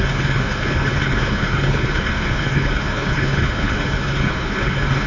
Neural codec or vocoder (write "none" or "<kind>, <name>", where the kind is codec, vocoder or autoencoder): codec, HILCodec